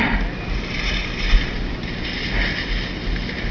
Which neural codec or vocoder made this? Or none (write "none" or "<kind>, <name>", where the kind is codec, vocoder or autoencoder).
none